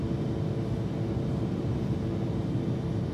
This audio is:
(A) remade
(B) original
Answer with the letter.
B